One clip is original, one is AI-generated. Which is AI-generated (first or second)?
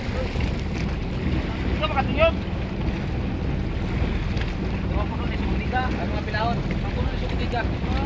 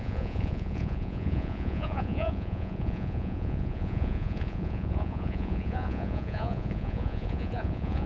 second